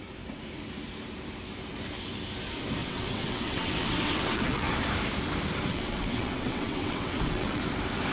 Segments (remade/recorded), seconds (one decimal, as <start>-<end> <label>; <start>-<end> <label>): 0.0-2.8 recorded; 2.8-4.7 remade; 4.7-5.7 recorded; 5.7-7.6 remade; 7.6-8.1 recorded